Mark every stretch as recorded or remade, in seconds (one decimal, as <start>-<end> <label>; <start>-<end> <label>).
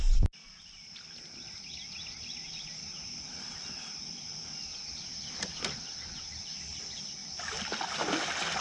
0.0-2.0 recorded; 2.0-6.4 remade; 6.4-7.2 recorded; 7.2-7.9 remade; 7.9-8.6 recorded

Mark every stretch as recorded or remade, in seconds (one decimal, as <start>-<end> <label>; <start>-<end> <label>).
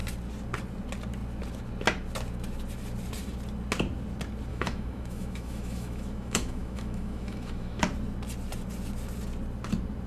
0.0-4.5 recorded; 4.5-7.8 remade; 7.8-10.1 recorded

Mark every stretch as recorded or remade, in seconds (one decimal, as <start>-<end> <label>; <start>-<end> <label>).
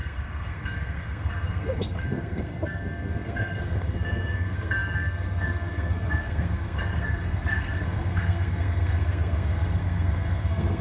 0.0-10.8 remade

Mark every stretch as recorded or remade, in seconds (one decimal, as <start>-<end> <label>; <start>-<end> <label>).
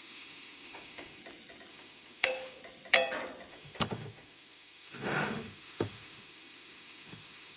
0.0-1.2 remade; 1.2-1.7 recorded; 1.7-2.6 remade; 2.6-3.5 recorded; 3.5-7.6 remade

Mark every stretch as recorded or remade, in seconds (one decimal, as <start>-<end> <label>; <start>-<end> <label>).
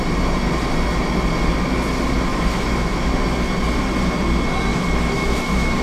0.0-2.3 recorded; 2.3-3.1 remade; 3.1-4.7 recorded; 4.7-5.8 remade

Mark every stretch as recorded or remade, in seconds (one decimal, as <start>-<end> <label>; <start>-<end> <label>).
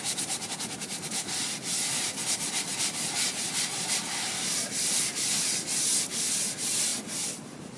0.0-7.8 recorded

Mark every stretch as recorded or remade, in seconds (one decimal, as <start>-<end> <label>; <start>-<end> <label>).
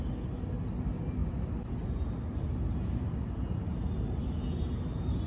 0.0-5.3 recorded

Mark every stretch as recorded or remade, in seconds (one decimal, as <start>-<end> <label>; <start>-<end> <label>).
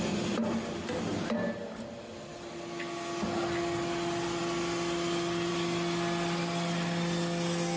0.0-7.8 recorded